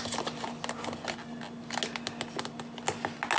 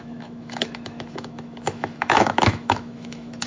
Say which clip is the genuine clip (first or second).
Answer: first